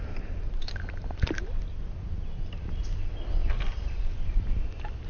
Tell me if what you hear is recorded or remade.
recorded